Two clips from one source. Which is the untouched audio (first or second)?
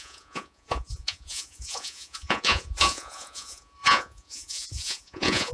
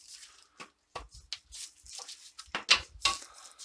second